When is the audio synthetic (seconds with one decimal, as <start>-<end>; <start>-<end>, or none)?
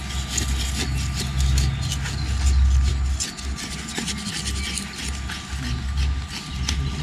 none